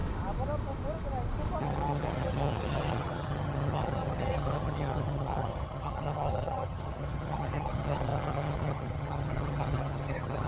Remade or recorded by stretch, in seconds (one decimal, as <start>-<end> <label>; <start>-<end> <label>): 0.0-1.6 recorded; 1.6-10.5 remade